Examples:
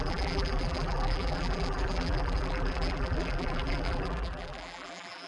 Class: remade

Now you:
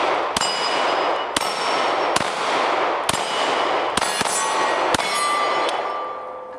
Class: recorded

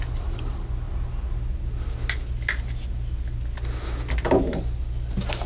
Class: recorded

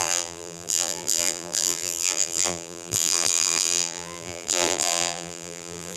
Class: remade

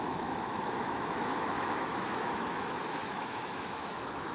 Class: remade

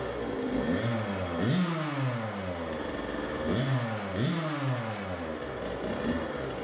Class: recorded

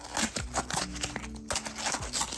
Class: recorded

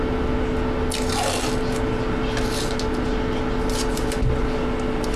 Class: recorded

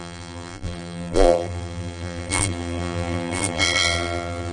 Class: remade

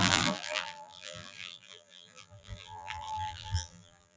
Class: remade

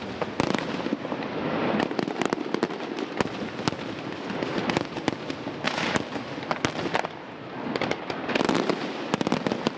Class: recorded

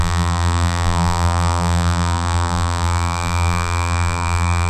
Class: remade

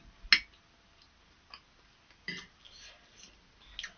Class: recorded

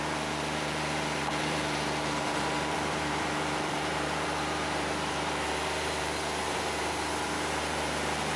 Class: remade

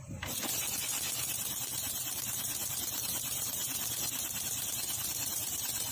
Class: remade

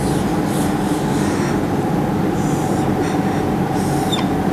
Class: recorded